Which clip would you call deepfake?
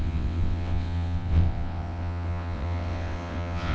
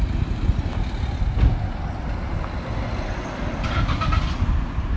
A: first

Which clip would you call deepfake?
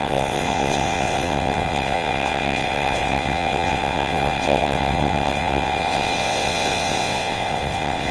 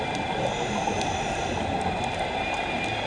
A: first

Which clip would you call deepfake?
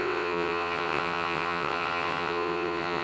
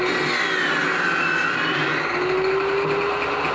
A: first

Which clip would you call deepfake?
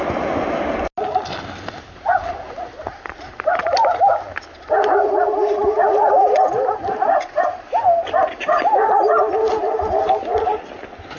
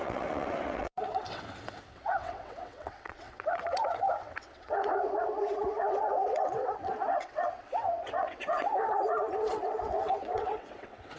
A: second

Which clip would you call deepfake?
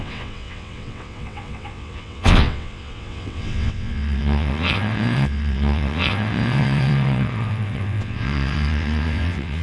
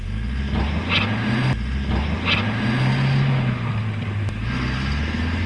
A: first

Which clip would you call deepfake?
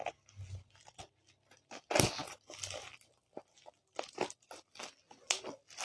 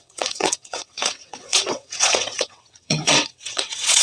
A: second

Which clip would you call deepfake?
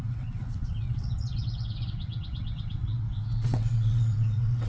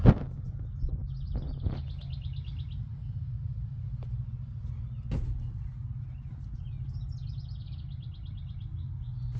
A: first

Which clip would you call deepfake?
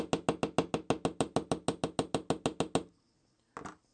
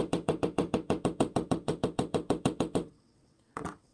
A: second